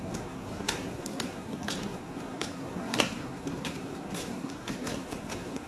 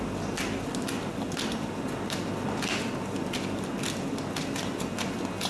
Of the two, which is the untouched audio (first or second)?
second